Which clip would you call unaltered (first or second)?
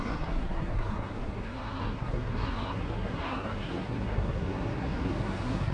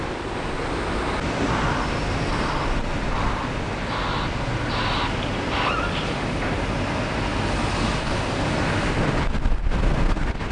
second